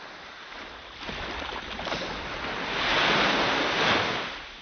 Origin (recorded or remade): recorded